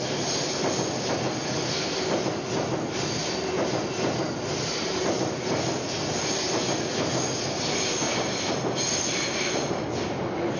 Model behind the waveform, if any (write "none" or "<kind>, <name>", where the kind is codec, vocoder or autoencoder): none